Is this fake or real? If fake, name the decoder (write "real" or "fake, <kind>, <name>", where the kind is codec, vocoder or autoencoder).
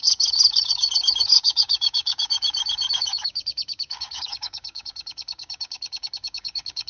fake, codec, DAC